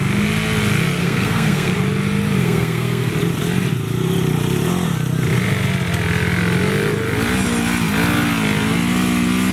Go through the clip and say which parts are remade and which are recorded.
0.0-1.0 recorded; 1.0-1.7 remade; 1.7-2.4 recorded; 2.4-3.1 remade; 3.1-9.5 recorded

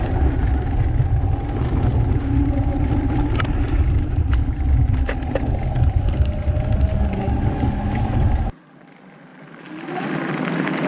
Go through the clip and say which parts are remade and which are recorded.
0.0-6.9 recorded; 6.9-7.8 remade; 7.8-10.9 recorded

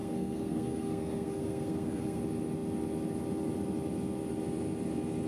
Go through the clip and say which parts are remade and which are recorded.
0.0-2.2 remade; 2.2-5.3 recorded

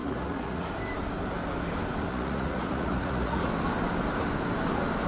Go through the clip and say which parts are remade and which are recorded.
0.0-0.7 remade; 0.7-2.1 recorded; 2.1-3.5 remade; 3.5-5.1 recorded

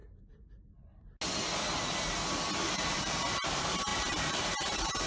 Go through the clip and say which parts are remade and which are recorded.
0.0-2.7 recorded; 2.7-5.1 remade